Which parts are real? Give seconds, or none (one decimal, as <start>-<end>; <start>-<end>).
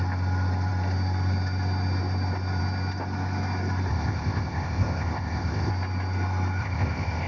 0.0-3.9; 5.7-6.6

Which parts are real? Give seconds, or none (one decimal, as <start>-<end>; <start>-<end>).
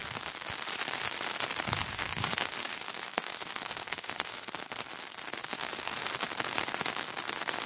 0.0-1.9; 4.5-5.5; 6.1-7.7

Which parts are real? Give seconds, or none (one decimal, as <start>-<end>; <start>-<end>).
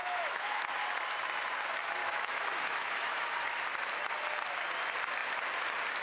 0.6-2.0; 3.3-6.0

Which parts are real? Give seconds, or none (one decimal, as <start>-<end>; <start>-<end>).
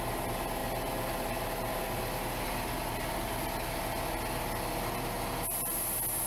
0.0-6.3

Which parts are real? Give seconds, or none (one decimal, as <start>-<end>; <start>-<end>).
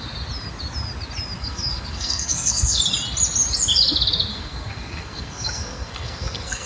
0.0-1.4; 2.8-4.3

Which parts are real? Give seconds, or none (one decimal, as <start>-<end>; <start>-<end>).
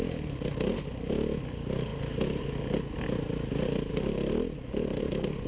0.0-5.5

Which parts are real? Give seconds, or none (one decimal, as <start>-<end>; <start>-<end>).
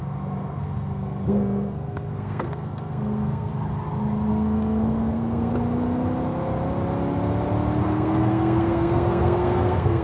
3.5-4.3; 5.5-7.8